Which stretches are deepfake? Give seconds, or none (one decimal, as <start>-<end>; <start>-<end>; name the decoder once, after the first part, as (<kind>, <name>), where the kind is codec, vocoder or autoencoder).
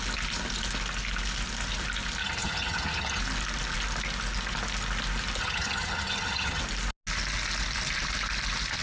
2.2-3.2 (vocoder, HiFi-GAN); 5.4-6.6